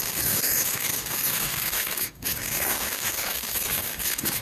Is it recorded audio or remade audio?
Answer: remade